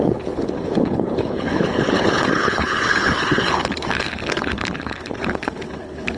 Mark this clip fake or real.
fake